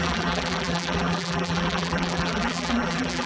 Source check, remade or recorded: remade